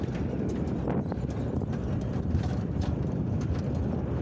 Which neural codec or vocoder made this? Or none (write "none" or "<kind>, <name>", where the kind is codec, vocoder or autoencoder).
none